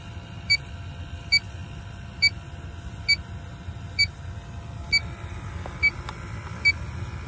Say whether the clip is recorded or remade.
recorded